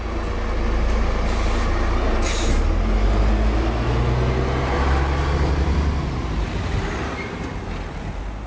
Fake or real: real